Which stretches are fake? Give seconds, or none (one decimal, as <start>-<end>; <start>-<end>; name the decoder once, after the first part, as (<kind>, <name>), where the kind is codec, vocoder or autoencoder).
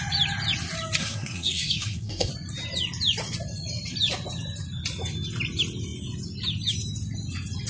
1.0-2.3 (codec, SNAC)